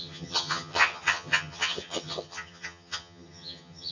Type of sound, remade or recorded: remade